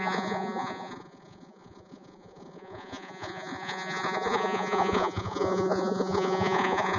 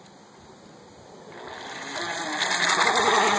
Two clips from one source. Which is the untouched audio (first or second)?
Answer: second